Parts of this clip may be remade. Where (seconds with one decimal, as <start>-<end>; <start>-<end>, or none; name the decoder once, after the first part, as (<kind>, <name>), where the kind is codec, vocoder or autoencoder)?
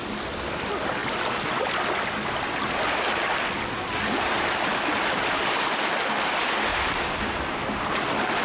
none